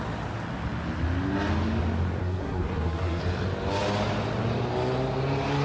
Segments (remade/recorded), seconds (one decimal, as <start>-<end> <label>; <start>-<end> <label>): 0.0-2.2 recorded; 2.2-3.2 remade; 3.2-5.6 recorded

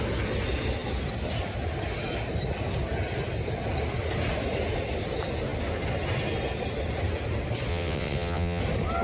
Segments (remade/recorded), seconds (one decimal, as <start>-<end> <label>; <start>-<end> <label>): 0.0-7.7 recorded; 7.7-8.6 remade; 8.6-9.0 recorded